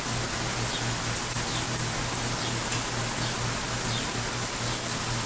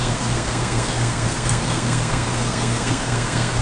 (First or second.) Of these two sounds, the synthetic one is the second